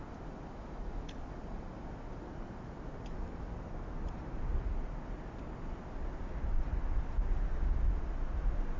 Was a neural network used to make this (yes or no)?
no